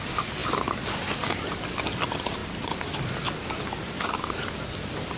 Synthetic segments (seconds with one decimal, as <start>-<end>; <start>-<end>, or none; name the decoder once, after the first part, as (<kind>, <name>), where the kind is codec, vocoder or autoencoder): none

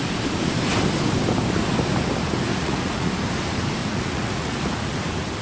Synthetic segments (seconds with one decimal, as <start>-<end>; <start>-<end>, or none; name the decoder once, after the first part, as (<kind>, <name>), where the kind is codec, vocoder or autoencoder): 2.5-3.1 (vocoder, Vocos); 3.8-4.9